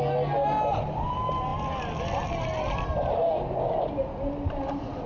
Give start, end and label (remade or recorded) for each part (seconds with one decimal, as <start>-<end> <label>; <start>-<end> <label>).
0.0-5.1 recorded